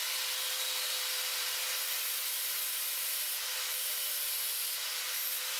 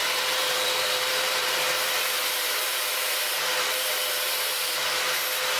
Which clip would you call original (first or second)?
first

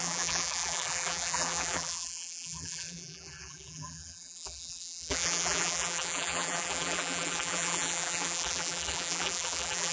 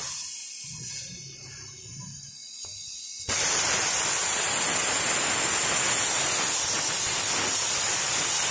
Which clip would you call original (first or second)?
second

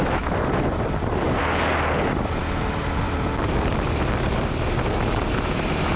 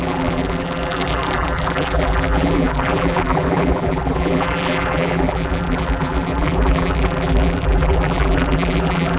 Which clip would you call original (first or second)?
first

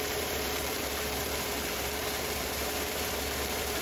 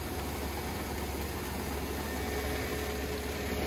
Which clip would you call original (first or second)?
second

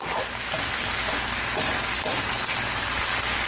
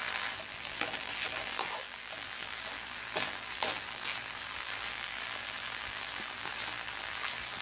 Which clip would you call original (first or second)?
first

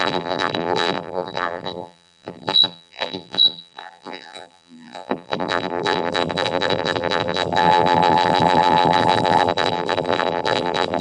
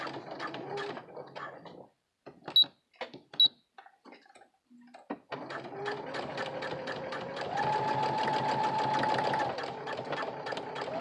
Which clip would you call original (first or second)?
second